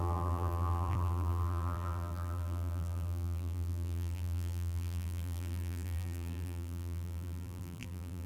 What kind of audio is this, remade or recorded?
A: remade